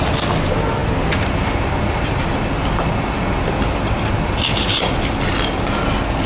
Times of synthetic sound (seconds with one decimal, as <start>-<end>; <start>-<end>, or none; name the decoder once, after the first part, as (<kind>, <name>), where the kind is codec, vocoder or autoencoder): none